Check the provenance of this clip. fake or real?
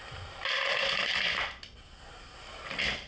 fake